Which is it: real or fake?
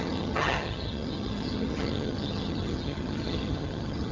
fake